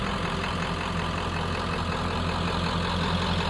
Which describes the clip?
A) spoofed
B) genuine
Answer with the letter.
B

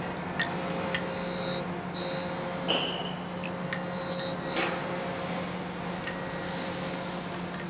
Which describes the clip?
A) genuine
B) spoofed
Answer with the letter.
A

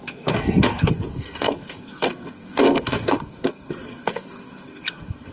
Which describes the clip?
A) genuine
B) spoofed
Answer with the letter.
B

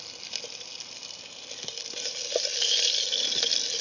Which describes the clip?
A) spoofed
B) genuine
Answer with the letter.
B